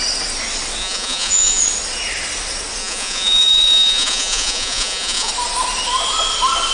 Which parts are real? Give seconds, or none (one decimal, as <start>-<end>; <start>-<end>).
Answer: 0.0-0.8; 1.6-2.8; 5.3-6.7

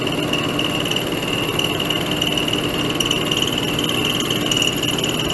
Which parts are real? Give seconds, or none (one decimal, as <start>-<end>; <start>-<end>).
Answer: 0.0-5.3

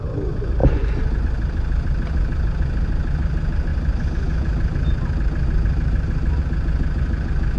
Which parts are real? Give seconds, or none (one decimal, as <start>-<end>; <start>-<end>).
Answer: 0.0-0.6; 1.2-7.6

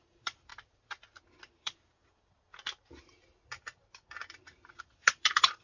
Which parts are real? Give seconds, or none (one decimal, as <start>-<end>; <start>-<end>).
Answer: 0.5-1.5; 2.5-4.8

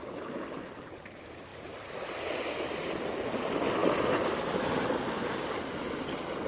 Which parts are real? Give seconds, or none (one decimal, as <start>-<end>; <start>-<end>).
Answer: 0.0-1.5; 2.1-3.8; 5.1-6.5

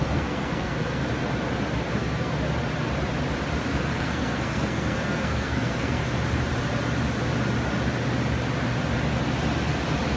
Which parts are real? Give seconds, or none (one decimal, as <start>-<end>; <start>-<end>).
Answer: 1.0-1.9; 2.3-3.7; 6.0-10.2